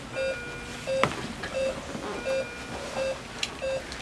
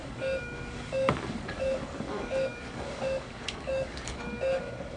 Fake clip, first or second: second